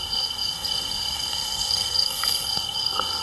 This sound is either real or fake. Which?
fake